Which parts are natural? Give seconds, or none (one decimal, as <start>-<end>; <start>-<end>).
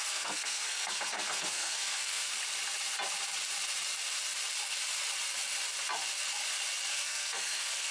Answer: 2.3-6.9